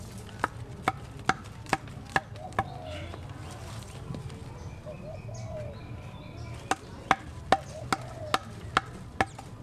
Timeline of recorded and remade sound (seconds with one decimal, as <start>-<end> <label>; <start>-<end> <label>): 0.0-9.6 recorded